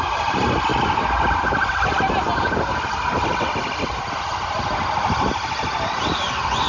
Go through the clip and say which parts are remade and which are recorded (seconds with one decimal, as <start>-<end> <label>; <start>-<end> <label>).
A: 0.0-6.7 recorded